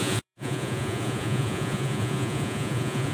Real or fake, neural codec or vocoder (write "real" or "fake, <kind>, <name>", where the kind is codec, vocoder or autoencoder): fake, vocoder, Vocos